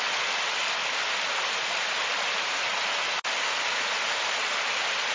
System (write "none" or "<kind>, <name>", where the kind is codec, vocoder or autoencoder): none